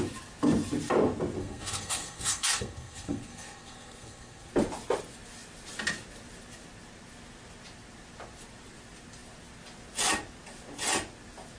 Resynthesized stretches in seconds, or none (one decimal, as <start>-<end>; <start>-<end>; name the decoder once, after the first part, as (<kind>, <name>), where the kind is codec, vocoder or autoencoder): 1.4-4.5 (codec, SNAC)